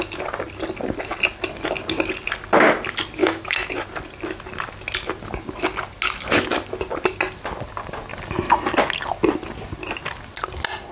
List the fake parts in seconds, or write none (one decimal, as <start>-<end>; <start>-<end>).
3.2-3.7